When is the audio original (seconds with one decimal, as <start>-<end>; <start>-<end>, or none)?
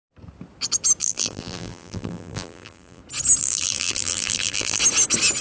0.0-1.0; 3.0-3.4; 4.8-5.4